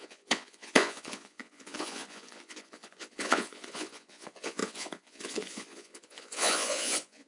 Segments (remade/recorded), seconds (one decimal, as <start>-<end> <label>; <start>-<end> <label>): 0.0-7.3 remade